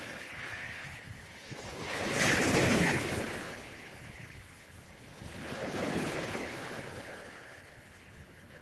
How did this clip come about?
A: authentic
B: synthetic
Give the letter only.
B